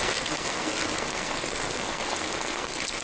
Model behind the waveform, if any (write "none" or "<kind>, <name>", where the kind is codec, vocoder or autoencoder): codec, SNAC